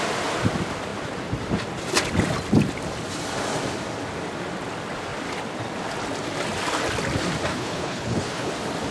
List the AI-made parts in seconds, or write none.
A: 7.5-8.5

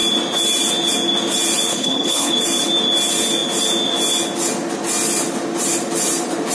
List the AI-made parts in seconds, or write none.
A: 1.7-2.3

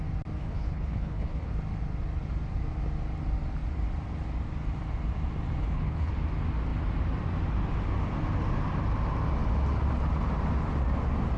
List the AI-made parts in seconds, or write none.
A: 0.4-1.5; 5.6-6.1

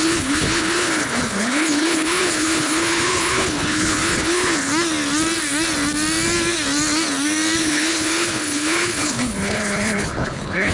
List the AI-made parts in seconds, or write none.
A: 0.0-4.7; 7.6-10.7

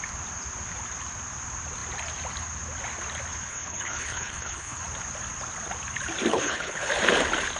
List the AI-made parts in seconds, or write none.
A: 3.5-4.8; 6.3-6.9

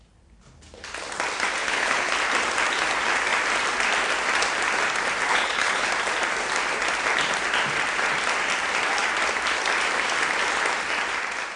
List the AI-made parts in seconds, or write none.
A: 1.6-2.1; 5.3-5.9

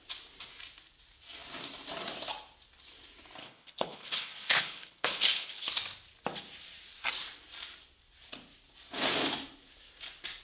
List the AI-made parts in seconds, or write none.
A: 3.4-5.7

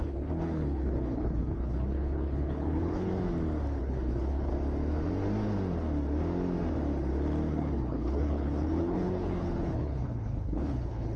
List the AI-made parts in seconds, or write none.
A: 0.0-3.1; 3.8-4.5; 7.5-11.2